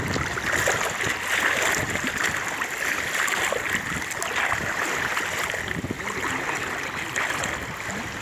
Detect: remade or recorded recorded